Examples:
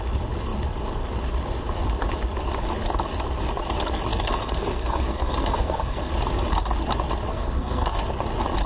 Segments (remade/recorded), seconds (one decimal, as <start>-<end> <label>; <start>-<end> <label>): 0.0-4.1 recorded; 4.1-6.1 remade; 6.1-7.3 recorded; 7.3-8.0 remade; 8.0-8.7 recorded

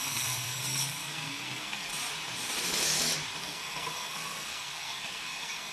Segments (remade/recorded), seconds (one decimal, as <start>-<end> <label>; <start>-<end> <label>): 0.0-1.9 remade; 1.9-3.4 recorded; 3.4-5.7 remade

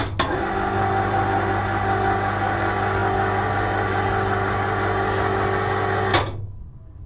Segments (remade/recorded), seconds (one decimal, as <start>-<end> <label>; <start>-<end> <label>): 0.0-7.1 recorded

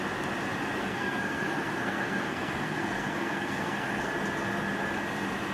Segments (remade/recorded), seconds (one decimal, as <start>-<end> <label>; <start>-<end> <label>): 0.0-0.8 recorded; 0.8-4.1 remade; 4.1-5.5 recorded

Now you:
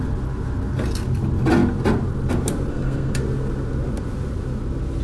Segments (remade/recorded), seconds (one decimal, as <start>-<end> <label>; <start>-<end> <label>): 0.0-2.7 recorded; 2.7-3.2 remade; 3.2-5.0 recorded